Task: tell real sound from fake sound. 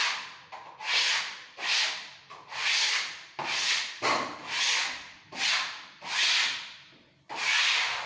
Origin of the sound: real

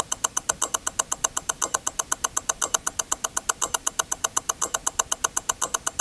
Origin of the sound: real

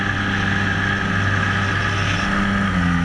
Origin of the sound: real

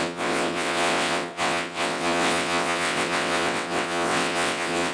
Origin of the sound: fake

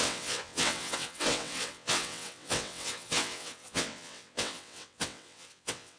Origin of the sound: fake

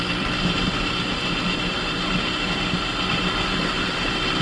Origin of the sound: real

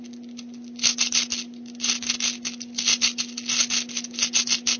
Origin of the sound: real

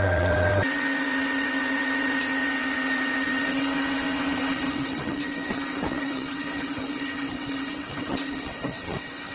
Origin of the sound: fake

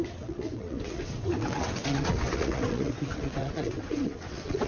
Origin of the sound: fake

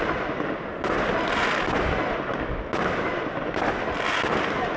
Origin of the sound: real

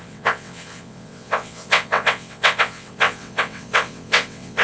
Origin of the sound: fake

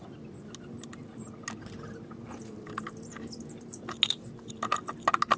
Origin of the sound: real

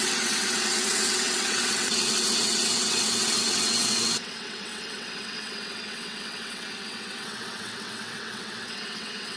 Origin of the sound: fake